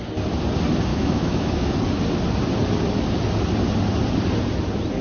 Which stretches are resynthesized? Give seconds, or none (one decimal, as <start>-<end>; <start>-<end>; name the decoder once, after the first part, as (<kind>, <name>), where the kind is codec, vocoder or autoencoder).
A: 0.9-1.7 (autoencoder, DAC-VAE)

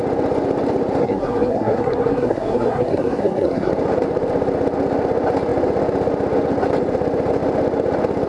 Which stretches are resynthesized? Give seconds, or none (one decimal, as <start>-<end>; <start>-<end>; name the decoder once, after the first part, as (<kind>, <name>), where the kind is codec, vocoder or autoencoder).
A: 1.0-3.7 (codec, SNAC)

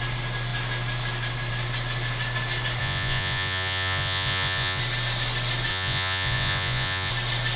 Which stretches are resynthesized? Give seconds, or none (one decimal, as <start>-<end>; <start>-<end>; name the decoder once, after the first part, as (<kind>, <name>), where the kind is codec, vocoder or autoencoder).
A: 2.8-4.8 (vocoder, Vocos); 5.7-7.1

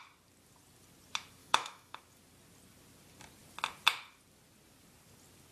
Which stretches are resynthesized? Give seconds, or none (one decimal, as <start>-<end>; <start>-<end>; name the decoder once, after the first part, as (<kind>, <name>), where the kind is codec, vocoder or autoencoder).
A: 1.4-2.0 (autoencoder, DAC-VAE)